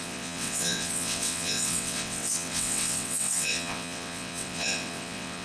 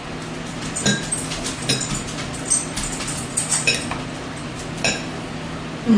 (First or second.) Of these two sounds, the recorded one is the second